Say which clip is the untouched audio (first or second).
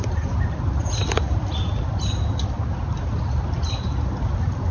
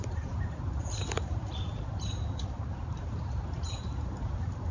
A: first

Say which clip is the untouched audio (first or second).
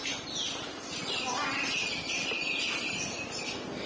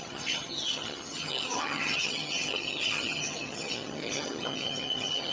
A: first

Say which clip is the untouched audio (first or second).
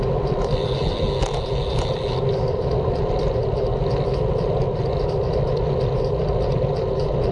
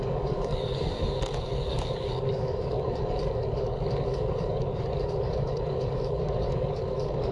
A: first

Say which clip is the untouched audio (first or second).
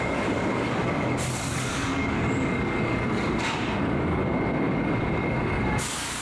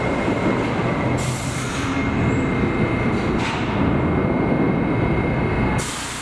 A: second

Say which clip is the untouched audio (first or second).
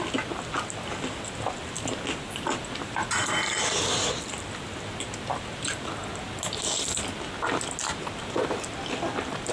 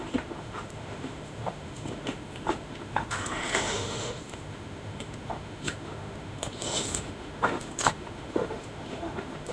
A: first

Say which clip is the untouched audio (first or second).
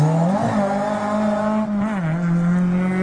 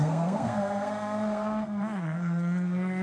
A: first